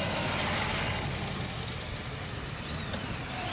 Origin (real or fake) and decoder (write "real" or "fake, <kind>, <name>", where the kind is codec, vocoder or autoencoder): real